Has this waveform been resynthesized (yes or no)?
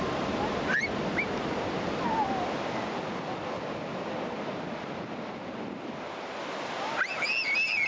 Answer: no